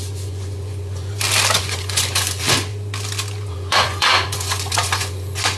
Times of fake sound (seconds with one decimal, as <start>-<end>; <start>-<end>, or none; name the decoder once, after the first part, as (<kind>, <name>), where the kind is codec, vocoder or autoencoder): 0.0-1.1 (vocoder, Vocos); 1.6-2.7; 3.5-5.6